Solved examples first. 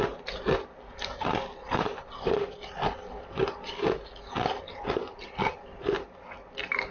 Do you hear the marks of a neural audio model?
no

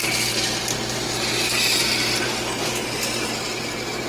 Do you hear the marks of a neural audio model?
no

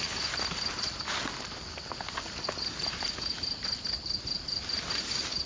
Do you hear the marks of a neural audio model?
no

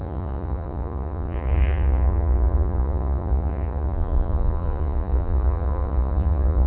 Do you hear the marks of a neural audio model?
yes